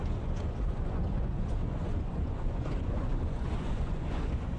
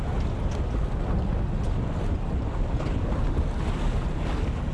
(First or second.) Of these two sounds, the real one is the second